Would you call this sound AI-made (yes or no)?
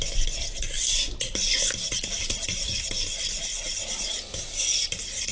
no